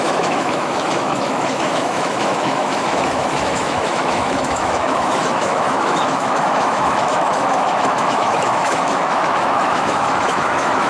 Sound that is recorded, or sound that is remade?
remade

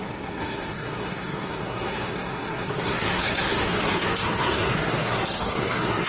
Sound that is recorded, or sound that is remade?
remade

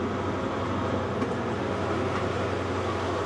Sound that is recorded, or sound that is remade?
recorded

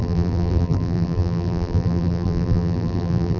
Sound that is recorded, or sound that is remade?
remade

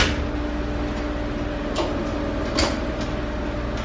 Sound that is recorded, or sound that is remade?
recorded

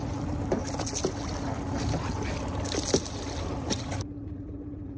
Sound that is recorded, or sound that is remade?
recorded